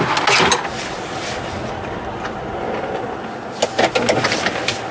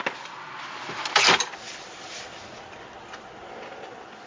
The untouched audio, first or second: first